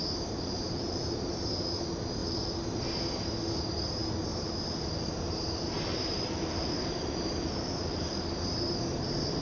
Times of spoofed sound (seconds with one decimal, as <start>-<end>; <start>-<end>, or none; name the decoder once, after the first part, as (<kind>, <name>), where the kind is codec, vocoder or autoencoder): 0.0-2.2 (vocoder, BigVGAN v2); 3.6-9.4